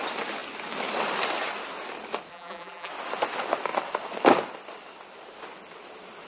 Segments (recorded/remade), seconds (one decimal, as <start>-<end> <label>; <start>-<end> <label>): 0.0-2.3 recorded; 2.3-2.9 remade; 2.9-6.3 recorded